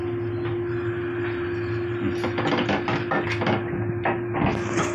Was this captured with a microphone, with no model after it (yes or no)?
yes